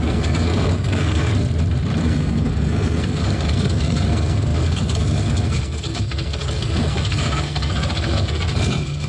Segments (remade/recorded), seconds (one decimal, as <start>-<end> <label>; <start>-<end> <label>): 0.0-1.3 remade; 1.3-2.0 recorded; 2.0-9.1 remade